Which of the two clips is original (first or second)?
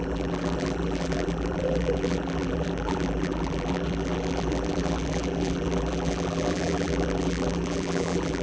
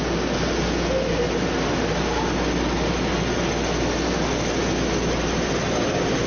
second